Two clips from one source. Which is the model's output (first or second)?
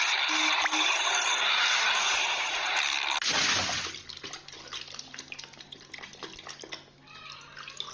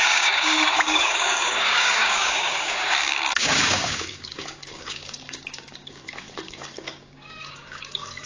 second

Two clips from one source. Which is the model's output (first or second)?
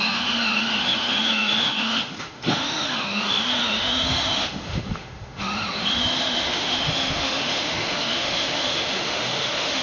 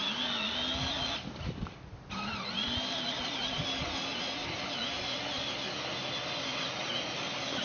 first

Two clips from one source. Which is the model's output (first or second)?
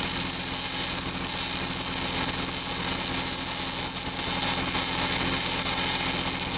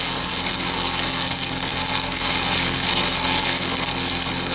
second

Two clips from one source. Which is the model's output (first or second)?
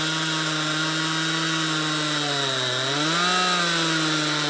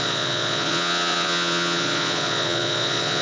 second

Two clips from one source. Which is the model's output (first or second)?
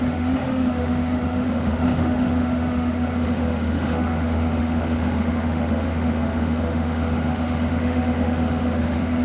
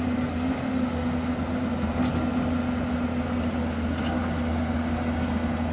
first